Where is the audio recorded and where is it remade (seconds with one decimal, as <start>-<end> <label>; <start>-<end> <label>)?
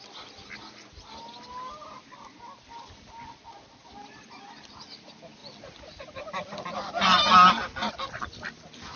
0.0-9.0 recorded